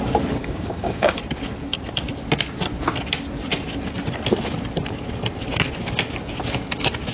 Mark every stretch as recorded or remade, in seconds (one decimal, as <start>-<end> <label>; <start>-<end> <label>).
0.0-0.4 recorded; 0.4-1.2 remade; 1.2-7.1 recorded

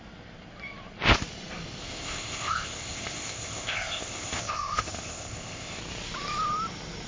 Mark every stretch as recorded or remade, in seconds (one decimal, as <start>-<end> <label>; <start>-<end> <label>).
0.0-1.8 recorded; 1.8-5.8 remade; 5.8-7.1 recorded

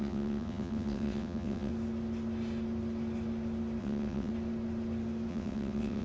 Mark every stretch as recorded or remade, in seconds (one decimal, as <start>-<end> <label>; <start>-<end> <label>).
0.0-1.7 remade; 1.7-3.8 recorded; 3.8-4.3 remade; 4.3-5.3 recorded; 5.3-6.0 remade

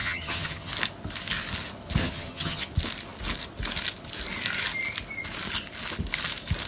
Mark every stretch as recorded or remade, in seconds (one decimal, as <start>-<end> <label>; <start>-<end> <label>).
0.0-0.7 remade; 0.7-2.0 recorded; 2.0-2.7 remade; 2.7-6.7 recorded